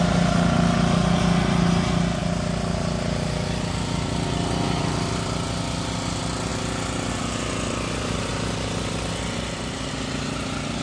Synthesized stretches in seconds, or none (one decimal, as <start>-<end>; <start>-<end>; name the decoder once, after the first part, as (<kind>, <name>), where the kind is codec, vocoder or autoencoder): none